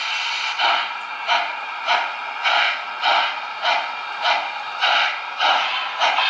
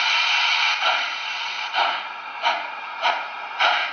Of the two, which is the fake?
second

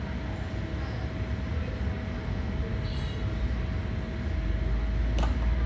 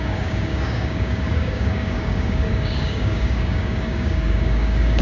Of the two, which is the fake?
second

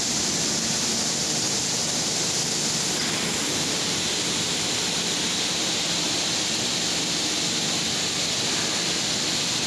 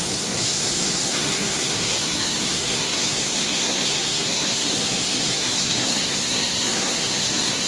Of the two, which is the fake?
second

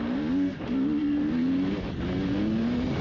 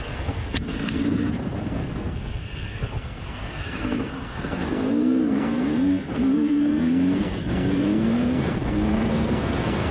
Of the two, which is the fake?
second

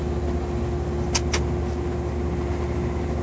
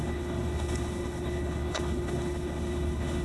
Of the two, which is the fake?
second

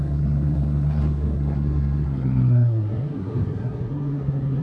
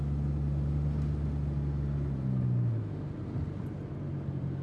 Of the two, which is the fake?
first